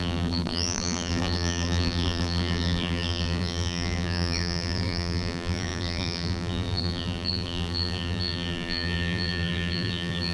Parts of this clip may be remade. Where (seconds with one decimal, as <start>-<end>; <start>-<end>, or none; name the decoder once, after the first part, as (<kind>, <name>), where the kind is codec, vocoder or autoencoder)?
0.0-10.3 (vocoder, BigVGAN v2)

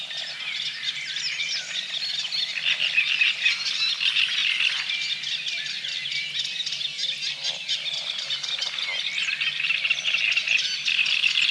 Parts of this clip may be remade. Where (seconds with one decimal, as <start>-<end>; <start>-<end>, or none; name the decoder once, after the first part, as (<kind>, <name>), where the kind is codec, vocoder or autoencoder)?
4.4-5.1 (vocoder, BigVGAN v2)

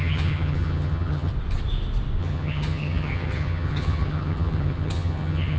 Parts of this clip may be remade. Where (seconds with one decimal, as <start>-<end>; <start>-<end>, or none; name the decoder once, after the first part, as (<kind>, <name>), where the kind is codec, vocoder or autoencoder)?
0.0-1.3 (vocoder, HiFi-GAN); 2.2-5.6

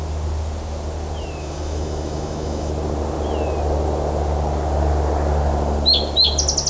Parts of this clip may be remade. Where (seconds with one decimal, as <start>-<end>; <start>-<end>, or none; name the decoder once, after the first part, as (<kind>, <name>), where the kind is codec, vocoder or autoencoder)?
1.4-2.7 (autoencoder, DAC-VAE)

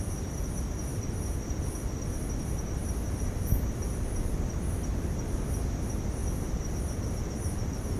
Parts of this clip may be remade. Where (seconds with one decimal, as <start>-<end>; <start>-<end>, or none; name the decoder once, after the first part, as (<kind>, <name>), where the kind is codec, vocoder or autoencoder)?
none

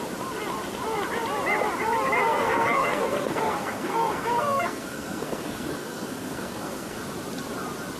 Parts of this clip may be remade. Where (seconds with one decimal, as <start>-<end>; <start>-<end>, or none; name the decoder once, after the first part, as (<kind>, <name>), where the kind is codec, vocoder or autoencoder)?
2.2-7.0 (codec, SNAC)

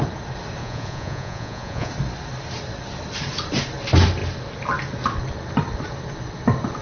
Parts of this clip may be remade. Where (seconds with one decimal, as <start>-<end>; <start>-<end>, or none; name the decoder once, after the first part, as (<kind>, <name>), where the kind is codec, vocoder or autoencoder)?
0.6-1.9 (vocoder, Vocos)